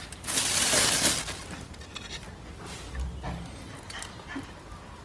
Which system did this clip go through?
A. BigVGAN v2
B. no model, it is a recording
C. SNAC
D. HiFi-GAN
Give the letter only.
B